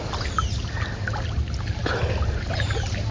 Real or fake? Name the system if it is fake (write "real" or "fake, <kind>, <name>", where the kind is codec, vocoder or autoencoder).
real